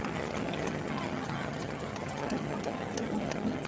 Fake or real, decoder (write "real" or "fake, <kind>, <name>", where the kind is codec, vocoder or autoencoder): fake, vocoder, HiFi-GAN